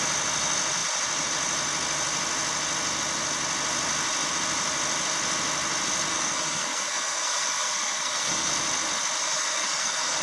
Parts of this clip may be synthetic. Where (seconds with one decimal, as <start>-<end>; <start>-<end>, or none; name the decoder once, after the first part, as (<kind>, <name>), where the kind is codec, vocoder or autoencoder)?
6.1-8.5 (codec, SNAC); 9.2-10.2